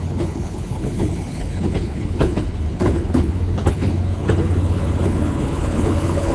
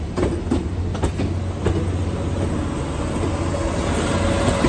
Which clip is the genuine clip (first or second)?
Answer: second